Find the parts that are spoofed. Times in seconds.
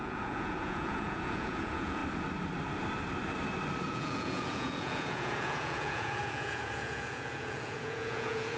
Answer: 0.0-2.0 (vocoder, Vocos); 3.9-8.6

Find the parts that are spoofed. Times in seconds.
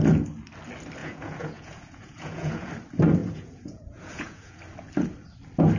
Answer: 1.0-2.7 (vocoder, Vocos); 3.2-4.6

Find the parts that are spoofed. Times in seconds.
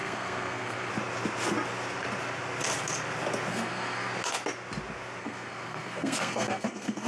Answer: 0.0-0.9 (codec, SNAC); 3.5-4.1; 5.2-7.1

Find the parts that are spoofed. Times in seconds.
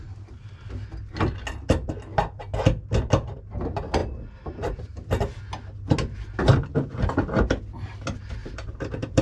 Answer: 8.4-9.2 (vocoder, BigVGAN v2)